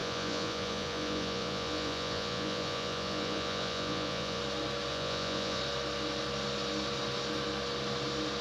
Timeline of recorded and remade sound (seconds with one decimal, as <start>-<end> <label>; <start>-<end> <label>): 0.0-4.4 remade; 4.4-4.9 recorded; 4.9-5.6 remade; 5.6-8.4 recorded